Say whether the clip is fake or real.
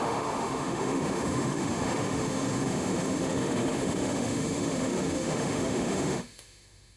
fake